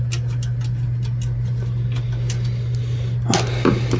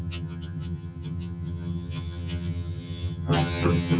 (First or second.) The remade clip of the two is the second